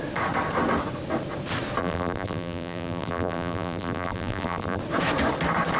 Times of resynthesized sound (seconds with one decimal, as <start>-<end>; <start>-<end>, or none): 1.8-4.8